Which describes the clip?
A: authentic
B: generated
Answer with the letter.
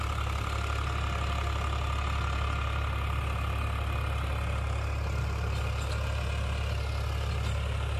A